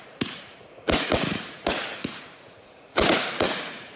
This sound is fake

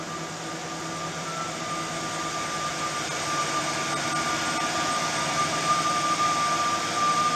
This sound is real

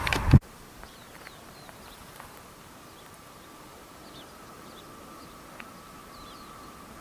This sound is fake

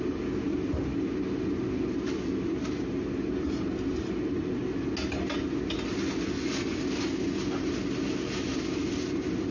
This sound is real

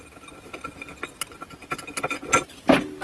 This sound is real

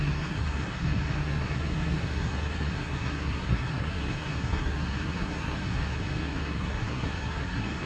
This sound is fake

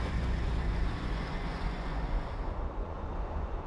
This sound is fake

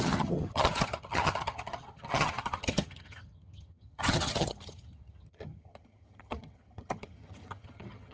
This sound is fake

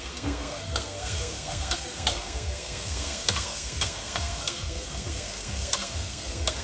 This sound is fake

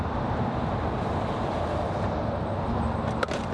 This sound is real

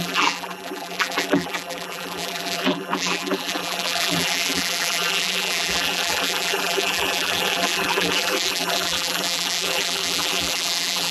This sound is fake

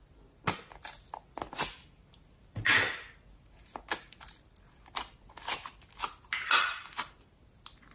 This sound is real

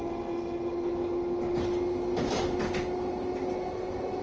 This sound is real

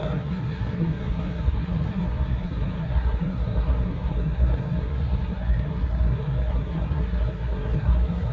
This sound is fake